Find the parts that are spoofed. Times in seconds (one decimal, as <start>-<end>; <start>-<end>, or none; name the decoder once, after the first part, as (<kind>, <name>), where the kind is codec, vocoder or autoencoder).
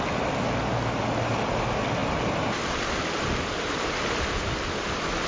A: none